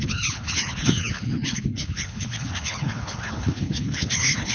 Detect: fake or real fake